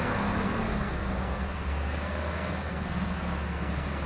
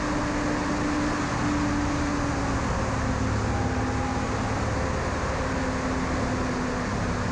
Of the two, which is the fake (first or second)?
first